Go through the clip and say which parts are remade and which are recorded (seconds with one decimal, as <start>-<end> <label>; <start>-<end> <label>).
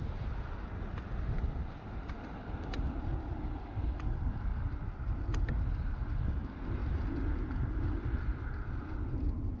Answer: 0.0-9.6 recorded